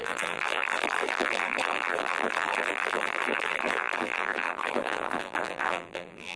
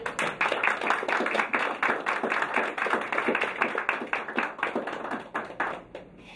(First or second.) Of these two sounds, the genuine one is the second